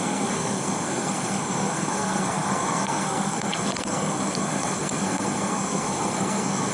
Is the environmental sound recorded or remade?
remade